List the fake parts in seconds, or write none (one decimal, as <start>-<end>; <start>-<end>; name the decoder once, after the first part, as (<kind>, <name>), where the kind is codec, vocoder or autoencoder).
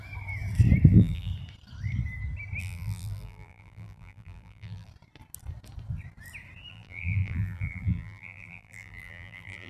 0.9-1.3 (vocoder, BigVGAN v2); 2.6-4.9; 6.7-9.7